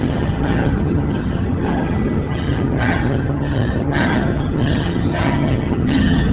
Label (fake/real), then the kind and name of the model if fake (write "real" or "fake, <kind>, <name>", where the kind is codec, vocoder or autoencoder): fake, vocoder, HiFi-GAN